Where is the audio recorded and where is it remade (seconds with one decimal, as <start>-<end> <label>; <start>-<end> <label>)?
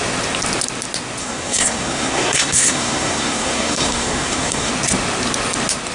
0.0-1.2 recorded; 1.2-4.7 remade; 4.7-5.9 recorded